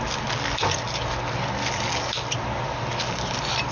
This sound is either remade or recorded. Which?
recorded